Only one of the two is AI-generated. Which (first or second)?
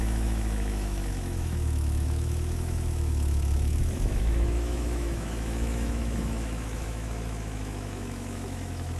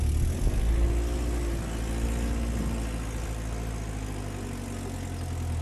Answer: first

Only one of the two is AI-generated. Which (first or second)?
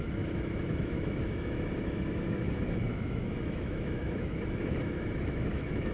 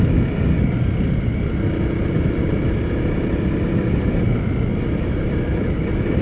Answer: first